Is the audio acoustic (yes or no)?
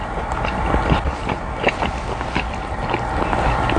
yes